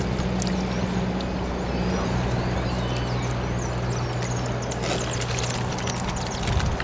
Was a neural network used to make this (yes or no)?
no